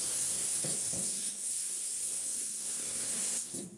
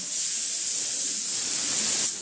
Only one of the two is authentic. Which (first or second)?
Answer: second